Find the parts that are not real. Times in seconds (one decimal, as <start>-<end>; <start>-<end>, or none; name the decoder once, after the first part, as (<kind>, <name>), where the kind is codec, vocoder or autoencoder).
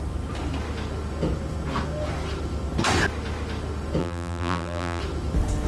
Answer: 4.0-5.0 (vocoder, BigVGAN v2)